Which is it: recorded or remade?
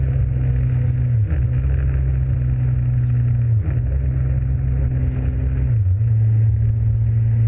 recorded